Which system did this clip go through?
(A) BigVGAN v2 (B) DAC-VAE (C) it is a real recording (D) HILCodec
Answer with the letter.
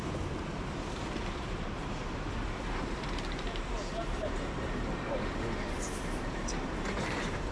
A